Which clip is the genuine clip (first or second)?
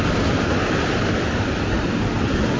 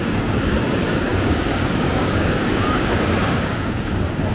first